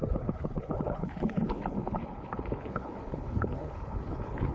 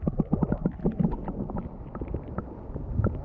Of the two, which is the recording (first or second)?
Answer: second